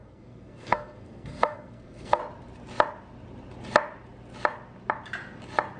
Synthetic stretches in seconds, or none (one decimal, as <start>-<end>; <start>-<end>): 0.0-2.2